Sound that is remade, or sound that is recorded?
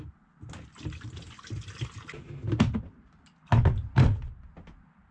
recorded